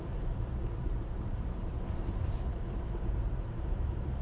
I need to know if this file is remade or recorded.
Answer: remade